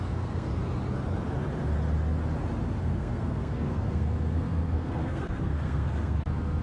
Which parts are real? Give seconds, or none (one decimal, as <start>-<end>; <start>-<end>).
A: 0.5-2.8